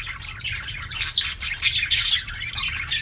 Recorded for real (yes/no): yes